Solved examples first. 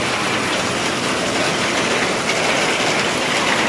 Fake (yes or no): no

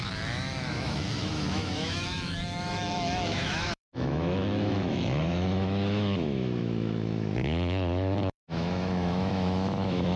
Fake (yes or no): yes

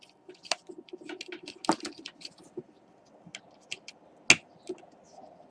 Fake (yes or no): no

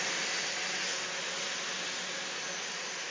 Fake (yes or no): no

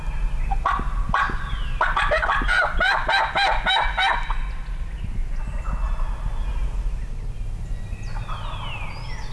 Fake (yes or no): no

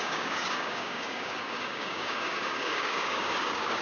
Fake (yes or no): yes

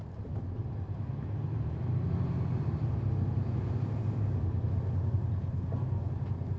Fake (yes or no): no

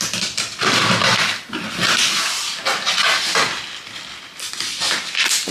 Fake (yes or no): no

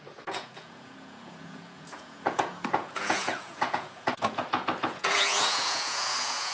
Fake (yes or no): yes